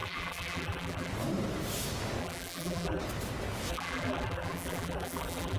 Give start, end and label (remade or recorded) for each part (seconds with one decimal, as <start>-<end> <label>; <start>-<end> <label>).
0.0-1.1 remade; 1.1-2.2 recorded; 2.2-3.0 remade; 3.0-3.7 recorded; 3.7-5.6 remade